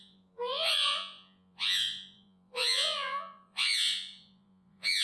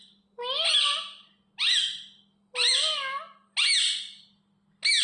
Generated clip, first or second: first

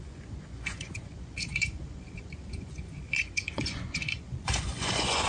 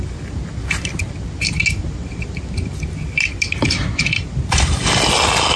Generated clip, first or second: first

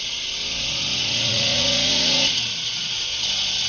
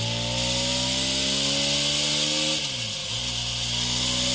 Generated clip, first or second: first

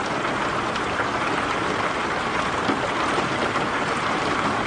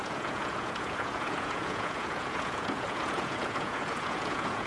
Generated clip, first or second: second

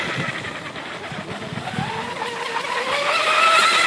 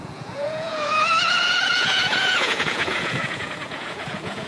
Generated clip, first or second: second